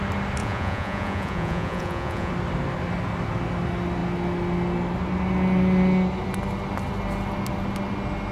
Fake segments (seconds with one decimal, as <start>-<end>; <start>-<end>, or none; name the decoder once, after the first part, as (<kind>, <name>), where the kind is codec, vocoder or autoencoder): 0.4-2.3 (vocoder, Vocos)